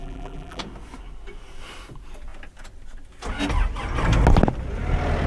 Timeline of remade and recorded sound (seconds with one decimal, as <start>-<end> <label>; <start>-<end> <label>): 0.0-0.6 remade; 0.6-5.3 recorded